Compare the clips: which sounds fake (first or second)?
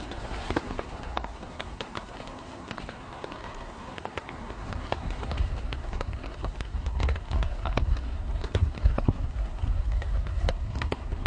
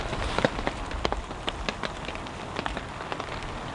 first